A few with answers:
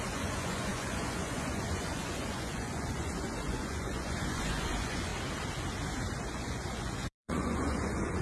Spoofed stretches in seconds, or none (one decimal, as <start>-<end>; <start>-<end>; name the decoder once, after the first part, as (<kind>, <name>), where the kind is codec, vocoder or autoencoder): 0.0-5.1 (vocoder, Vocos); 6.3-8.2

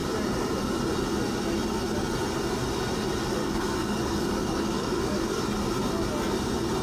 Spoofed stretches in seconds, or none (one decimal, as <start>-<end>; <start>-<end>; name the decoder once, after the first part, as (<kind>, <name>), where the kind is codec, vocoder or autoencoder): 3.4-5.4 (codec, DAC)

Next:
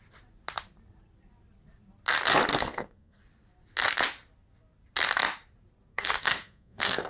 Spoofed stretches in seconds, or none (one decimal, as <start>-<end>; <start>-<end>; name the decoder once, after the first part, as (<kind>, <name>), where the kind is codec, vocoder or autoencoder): 2.5-3.2 (codec, SNAC); 5.9-7.1